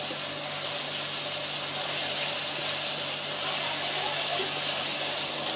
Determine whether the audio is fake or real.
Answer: real